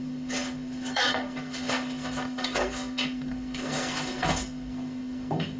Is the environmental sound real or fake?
fake